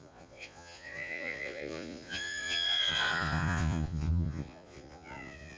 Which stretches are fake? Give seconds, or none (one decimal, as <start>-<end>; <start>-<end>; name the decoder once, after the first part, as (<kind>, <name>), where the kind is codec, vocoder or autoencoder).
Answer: 0.0-5.6 (vocoder, Vocos)